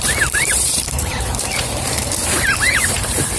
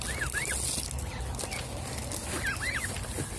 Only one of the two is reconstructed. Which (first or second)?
first